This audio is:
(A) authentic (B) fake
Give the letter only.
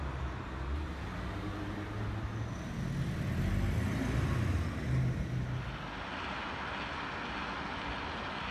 A